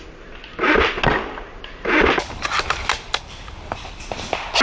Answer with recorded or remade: recorded